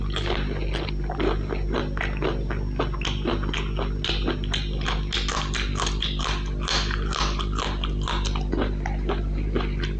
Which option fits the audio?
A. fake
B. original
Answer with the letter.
B